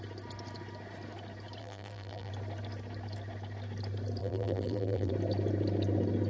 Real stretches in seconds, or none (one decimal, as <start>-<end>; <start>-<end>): 0.0-1.6; 2.3-4.2; 5.1-6.3